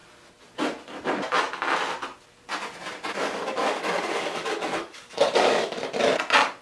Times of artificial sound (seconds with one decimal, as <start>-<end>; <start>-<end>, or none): 3.2-5.8